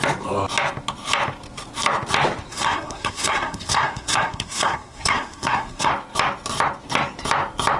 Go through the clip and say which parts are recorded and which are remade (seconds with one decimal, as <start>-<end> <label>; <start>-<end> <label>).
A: 0.0-2.5 recorded; 2.5-5.9 remade; 5.9-7.8 recorded